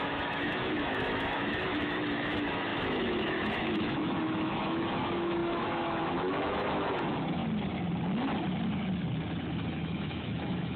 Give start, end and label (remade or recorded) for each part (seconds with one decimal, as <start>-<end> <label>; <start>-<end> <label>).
0.0-7.4 remade; 7.4-9.7 recorded; 9.7-10.8 remade